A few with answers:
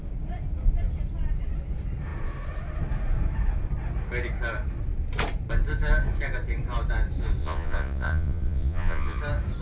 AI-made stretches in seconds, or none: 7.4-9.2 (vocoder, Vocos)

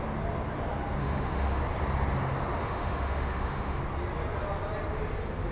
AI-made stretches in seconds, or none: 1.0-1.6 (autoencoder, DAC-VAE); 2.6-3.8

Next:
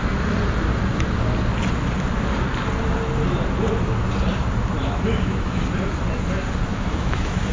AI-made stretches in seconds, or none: 4.8-5.6 (autoencoder, DAC-VAE); 6.7-7.5